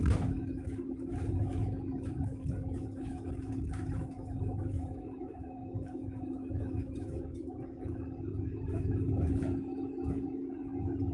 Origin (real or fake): fake